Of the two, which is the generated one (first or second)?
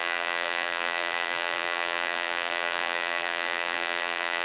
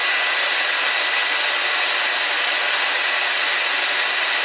first